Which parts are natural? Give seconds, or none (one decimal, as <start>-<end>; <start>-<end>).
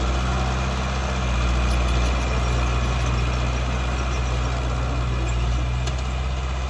0.0-6.7